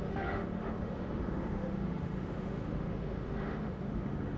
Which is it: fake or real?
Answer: fake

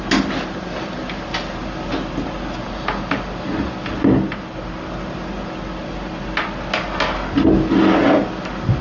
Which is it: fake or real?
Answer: real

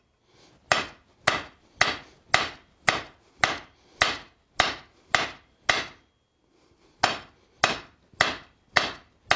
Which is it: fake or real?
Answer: real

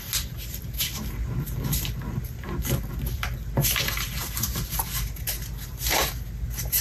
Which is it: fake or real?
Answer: real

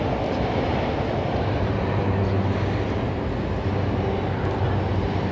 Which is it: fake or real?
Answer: real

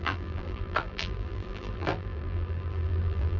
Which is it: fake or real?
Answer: fake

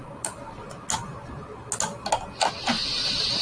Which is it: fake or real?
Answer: real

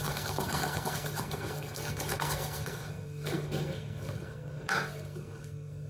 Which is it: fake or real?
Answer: fake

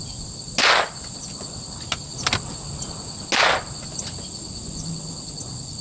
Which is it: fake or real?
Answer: real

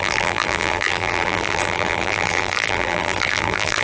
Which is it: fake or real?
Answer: fake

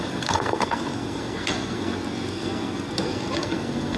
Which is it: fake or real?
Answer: fake